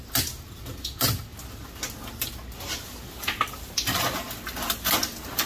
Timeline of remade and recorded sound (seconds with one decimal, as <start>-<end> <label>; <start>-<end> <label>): 0.0-5.5 recorded